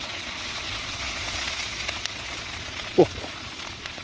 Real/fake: fake